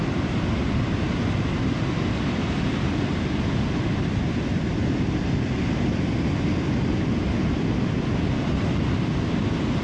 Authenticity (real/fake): real